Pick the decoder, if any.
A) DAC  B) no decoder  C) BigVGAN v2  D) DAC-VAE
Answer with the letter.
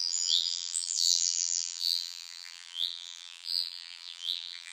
C